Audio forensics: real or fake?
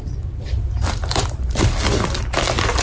real